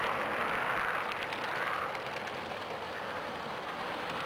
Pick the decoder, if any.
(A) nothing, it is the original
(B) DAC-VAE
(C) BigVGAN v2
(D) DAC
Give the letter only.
A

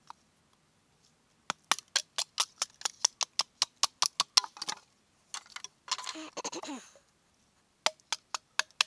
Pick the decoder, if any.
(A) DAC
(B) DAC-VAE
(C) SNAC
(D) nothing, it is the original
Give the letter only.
D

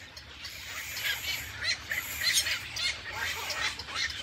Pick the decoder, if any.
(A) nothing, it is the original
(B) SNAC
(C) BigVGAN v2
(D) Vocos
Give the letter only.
A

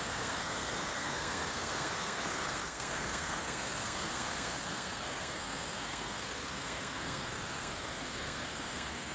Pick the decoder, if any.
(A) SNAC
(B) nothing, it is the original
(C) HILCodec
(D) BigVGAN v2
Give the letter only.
A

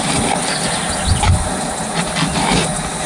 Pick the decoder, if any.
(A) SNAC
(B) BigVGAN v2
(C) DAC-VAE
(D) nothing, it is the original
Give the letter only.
D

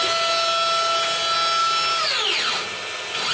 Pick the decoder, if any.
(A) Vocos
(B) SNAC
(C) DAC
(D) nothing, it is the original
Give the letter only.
D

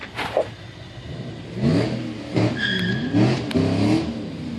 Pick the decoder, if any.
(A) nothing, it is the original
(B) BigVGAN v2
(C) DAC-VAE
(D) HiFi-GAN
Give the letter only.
A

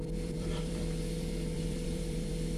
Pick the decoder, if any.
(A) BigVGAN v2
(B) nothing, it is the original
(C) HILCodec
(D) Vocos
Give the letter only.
A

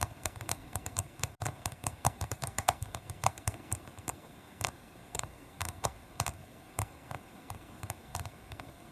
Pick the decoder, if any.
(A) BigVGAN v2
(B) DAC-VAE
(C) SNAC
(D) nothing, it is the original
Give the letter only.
C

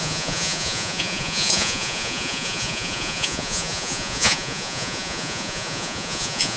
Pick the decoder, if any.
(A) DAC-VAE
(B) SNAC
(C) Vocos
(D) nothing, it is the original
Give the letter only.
C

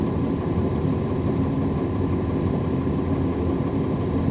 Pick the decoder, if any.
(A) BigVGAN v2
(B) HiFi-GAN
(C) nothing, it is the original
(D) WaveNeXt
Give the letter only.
C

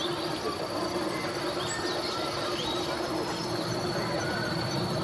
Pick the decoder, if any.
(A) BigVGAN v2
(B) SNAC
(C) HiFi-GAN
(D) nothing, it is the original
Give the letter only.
D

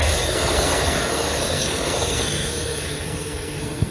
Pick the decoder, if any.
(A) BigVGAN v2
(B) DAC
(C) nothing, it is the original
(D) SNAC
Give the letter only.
D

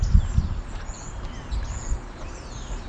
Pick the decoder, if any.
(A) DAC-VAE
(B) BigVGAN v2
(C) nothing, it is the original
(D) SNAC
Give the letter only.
C